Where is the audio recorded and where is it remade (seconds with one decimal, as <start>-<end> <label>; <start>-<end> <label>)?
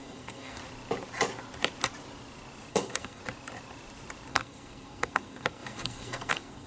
0.0-0.6 remade; 0.6-2.7 recorded; 2.7-3.2 remade; 3.2-4.3 recorded; 4.3-6.7 remade